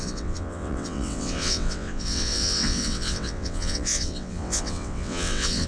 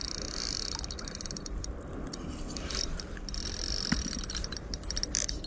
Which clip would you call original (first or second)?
second